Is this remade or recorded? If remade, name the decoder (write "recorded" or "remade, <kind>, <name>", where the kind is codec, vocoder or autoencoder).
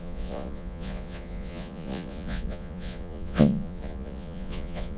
remade, vocoder, Vocos